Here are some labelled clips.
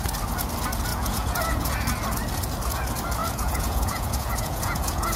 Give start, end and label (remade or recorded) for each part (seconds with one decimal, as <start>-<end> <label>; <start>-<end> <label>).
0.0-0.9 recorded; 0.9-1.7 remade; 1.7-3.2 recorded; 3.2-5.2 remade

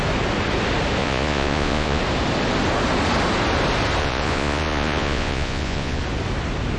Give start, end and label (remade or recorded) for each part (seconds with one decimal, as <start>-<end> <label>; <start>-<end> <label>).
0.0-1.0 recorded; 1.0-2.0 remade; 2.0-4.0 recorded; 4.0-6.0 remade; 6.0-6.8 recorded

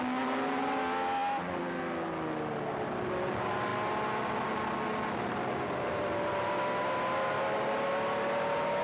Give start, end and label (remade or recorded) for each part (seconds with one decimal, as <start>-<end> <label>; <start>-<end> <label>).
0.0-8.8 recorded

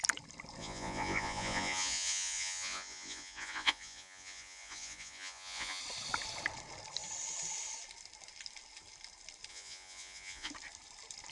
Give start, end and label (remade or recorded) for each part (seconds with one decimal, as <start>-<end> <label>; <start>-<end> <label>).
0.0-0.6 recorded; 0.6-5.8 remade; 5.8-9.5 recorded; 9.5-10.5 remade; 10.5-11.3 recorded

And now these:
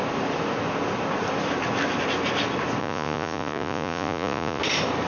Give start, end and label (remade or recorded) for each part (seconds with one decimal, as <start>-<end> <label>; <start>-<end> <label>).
0.0-2.8 recorded; 2.8-4.6 remade; 4.6-5.1 recorded

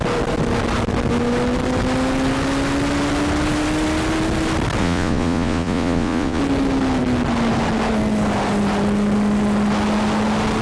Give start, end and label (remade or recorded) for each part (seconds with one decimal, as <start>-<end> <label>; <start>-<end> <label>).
0.0-4.8 recorded; 4.8-6.4 remade; 6.4-10.6 recorded

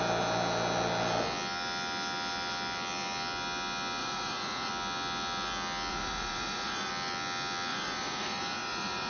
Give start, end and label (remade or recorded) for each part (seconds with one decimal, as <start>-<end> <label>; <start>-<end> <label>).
0.0-4.0 recorded; 4.0-4.7 remade; 4.7-5.9 recorded; 5.9-6.9 remade; 6.9-7.7 recorded; 7.7-9.1 remade